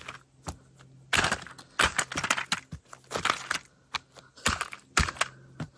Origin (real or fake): real